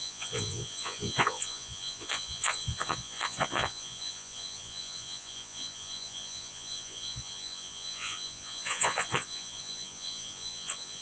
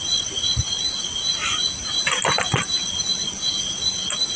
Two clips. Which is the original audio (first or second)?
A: second